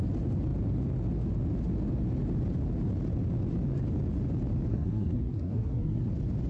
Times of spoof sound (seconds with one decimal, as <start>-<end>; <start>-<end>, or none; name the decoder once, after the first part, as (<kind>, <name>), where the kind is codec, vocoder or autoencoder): 4.7-6.1 (codec, SNAC)